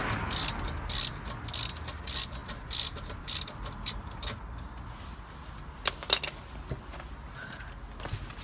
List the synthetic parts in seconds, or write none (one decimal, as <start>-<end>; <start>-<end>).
none

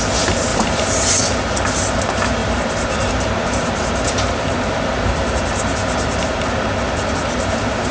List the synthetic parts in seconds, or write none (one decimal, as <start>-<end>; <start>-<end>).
0.5-1.1; 2.4-6.5

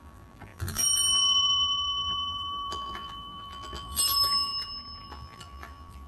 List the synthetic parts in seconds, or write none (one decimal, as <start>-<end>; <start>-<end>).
0.0-4.5; 5.0-6.1

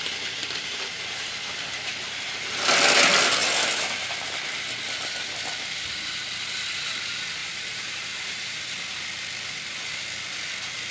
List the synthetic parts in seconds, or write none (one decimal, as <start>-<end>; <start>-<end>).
0.4-1.4; 7.4-8.6

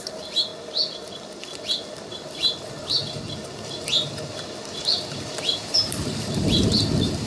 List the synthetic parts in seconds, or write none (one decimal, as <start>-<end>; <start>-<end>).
0.0-0.5; 2.1-3.0; 5.5-7.3

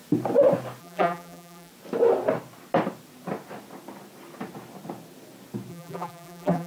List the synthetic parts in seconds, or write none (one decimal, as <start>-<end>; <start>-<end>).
0.8-1.7; 5.7-6.7

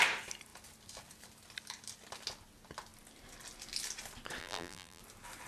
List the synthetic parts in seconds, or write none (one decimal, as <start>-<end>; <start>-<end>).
4.4-5.0